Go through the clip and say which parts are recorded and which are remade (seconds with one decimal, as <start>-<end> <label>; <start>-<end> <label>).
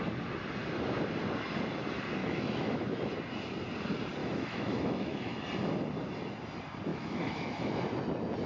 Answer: 0.0-2.2 recorded; 2.2-2.8 remade; 2.8-4.2 recorded; 4.2-5.4 remade; 5.4-6.9 recorded; 6.9-7.8 remade; 7.8-8.5 recorded